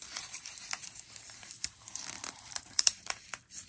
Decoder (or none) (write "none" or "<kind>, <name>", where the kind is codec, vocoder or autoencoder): vocoder, BigVGAN v2